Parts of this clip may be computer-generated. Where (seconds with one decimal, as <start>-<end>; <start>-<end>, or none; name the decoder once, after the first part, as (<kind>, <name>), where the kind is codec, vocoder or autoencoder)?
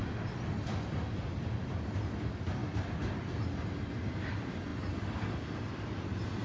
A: none